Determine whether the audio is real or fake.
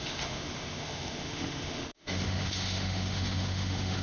fake